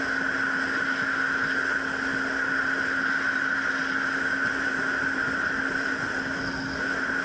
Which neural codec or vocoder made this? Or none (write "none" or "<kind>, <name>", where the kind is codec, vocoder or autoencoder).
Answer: none